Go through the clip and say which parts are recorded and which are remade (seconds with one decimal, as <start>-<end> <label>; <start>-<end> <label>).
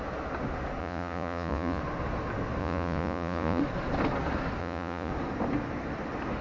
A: 0.0-0.8 recorded; 0.8-1.8 remade; 1.8-2.6 recorded; 2.6-3.6 remade; 3.6-4.6 recorded; 4.6-5.1 remade; 5.1-6.4 recorded